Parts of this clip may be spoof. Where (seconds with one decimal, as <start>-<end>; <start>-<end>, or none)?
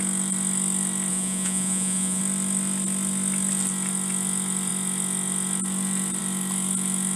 1.1-2.2